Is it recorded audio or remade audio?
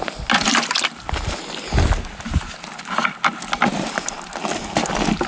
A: recorded